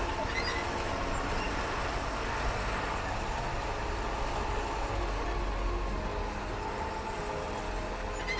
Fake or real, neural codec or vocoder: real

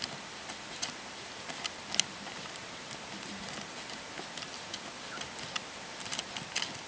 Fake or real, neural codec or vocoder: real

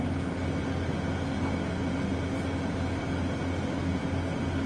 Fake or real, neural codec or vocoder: real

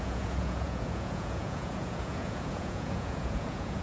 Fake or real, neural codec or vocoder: fake, vocoder, Vocos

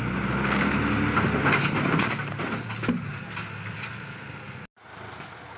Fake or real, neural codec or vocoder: real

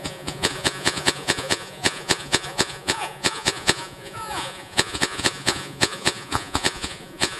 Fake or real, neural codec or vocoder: fake, vocoder, Vocos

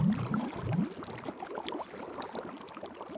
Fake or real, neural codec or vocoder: real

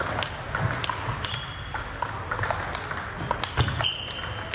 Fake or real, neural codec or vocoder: real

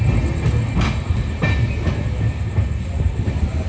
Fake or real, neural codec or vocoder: real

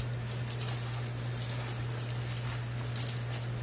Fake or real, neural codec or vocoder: real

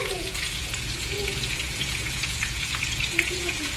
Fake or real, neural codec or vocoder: fake, vocoder, Vocos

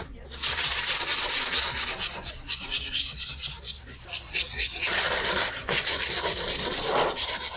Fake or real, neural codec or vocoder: fake, vocoder, Vocos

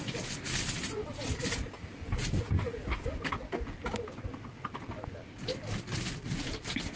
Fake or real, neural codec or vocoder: real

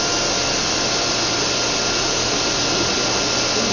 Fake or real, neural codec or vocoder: real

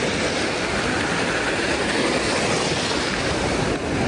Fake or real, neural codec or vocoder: real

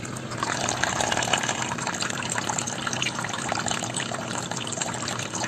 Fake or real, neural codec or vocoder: real